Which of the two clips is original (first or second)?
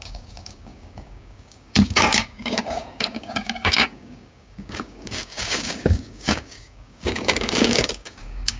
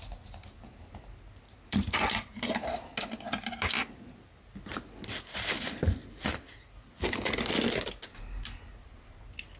second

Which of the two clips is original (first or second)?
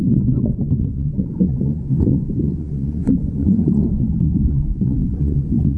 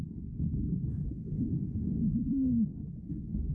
second